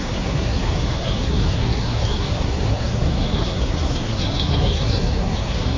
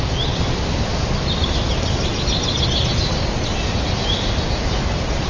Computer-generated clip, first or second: first